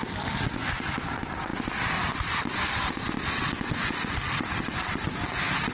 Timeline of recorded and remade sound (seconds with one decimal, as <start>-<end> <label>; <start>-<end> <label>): 0.0-1.5 recorded; 1.5-3.1 remade; 3.1-5.7 recorded

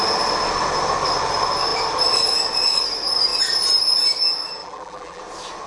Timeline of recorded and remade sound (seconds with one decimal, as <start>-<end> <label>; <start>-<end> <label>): 0.0-4.6 recorded; 4.6-5.2 remade; 5.2-5.7 recorded